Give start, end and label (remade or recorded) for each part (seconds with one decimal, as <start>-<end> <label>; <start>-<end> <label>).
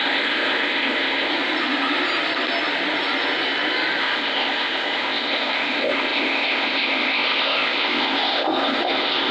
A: 0.0-1.3 remade; 1.3-4.0 recorded; 4.0-9.3 remade